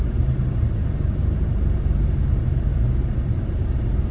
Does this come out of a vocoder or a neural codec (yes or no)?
yes